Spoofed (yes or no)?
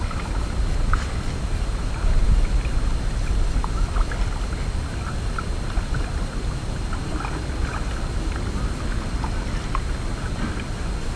no